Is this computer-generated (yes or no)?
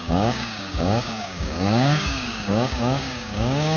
yes